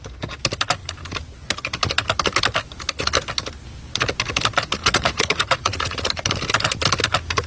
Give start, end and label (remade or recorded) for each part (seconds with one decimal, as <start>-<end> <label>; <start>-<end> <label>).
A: 0.0-4.8 recorded; 4.8-6.1 remade; 6.1-7.5 recorded

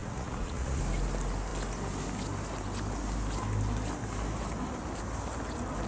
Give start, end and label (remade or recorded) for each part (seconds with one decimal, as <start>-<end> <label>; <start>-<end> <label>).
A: 0.0-0.8 remade; 0.8-5.9 recorded